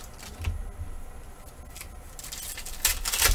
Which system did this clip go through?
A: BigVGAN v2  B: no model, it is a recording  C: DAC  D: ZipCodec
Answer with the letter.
B